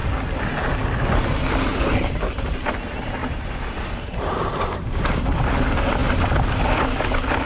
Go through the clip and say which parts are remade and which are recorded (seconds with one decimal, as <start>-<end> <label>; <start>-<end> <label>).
0.0-3.2 recorded; 3.2-5.3 remade; 5.3-7.5 recorded